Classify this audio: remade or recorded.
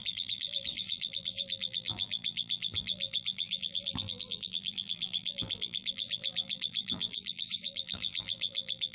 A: remade